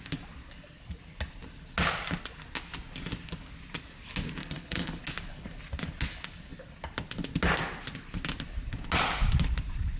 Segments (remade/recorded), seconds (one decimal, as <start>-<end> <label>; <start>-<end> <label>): 0.0-4.4 recorded; 4.4-5.0 remade; 5.0-10.0 recorded